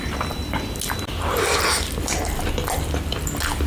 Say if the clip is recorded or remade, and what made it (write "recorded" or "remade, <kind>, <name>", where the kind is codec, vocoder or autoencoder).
recorded